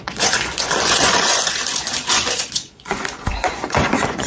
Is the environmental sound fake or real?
fake